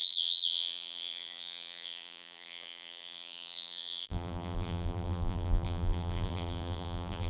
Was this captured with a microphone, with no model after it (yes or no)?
no